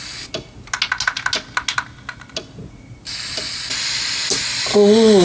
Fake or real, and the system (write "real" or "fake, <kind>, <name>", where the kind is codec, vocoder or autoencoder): real